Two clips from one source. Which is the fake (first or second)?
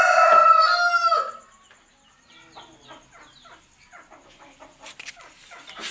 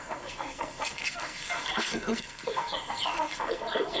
second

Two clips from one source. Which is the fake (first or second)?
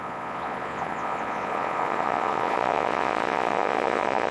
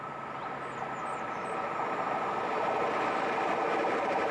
first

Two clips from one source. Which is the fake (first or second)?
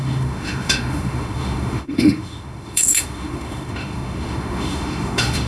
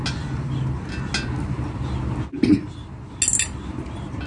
first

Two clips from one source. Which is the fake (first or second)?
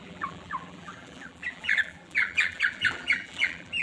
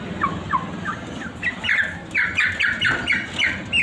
first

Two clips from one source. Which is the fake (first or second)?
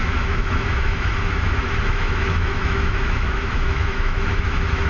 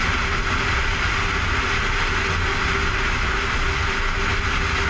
first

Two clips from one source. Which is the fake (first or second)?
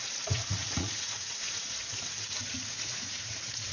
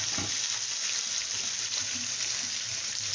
first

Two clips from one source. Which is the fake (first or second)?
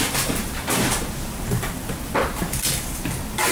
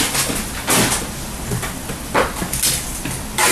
first